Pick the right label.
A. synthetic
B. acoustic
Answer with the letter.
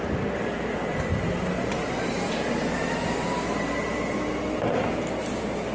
B